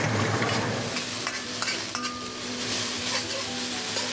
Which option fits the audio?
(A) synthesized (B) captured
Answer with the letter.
B